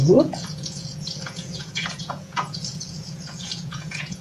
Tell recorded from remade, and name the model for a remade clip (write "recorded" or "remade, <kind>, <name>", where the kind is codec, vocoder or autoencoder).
remade, vocoder, Vocos